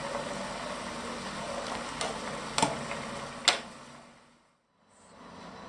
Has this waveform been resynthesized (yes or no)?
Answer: no